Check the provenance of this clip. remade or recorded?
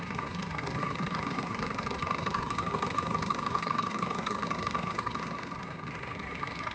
remade